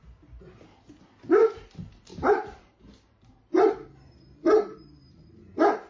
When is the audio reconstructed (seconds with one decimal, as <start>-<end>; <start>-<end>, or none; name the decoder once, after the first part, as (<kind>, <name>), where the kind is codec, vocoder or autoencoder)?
2.1-5.5 (vocoder, BigVGAN v2)